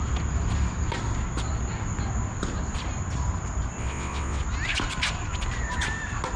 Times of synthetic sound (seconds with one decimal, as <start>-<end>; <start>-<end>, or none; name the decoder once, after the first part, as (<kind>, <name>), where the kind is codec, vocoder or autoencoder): 3.8-4.4 (vocoder, WaveNeXt)